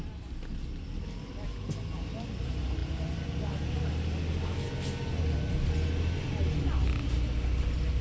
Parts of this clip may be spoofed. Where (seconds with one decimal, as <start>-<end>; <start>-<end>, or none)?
none